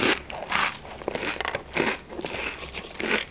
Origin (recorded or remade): recorded